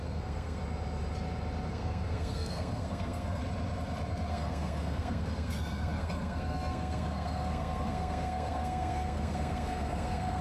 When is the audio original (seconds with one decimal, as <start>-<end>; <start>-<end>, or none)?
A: 0.6-1.7; 3.4-4.3